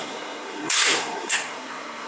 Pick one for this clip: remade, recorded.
remade